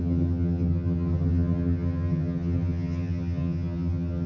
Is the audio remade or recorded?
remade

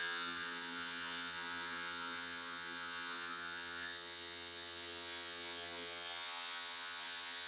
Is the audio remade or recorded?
remade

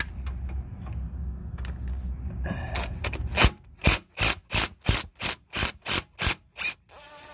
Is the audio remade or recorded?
recorded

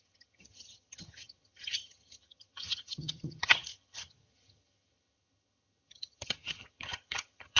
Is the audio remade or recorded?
remade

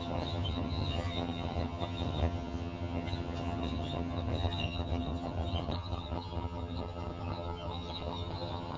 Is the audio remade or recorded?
remade